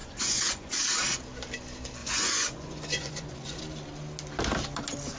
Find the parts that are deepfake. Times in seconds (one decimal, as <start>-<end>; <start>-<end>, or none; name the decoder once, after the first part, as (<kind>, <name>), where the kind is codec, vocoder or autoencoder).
0.0-0.8 (vocoder, Vocos); 2.0-3.6